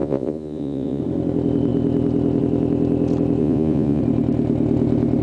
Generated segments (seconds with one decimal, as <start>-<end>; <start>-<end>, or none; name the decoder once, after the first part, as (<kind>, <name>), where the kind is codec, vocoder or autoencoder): 0.0-1.0 (vocoder, Vocos); 3.4-4.0